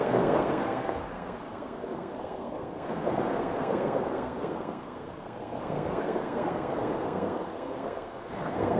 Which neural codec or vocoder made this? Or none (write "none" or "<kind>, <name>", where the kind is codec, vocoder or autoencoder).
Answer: codec, SNAC